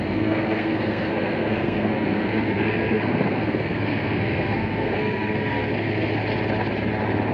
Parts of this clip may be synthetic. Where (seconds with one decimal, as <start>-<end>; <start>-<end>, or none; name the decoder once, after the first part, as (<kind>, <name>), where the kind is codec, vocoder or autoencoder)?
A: 0.0-6.2 (codec, SNAC)